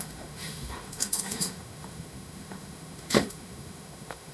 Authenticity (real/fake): fake